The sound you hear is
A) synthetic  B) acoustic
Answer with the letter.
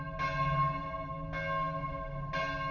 B